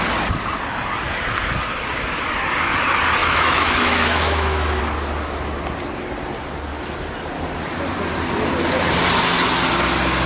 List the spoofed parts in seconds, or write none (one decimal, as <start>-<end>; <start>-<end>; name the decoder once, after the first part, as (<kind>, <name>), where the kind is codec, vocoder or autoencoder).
3.2-4.8 (autoencoder, DAC-VAE)